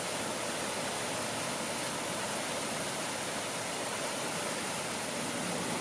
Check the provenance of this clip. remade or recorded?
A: recorded